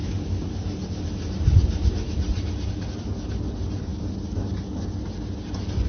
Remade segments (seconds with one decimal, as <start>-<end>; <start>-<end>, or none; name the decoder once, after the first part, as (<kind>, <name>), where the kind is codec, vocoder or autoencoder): 3.9-4.6 (vocoder, BigVGAN v2)